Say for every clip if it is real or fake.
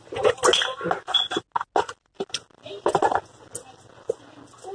real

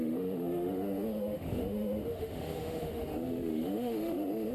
fake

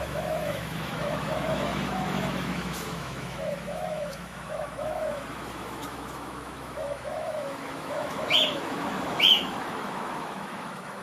fake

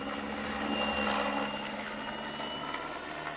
real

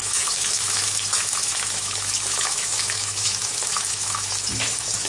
fake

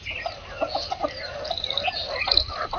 real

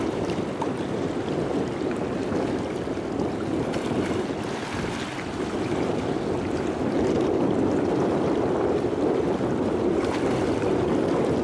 real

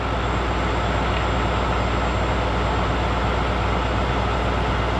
real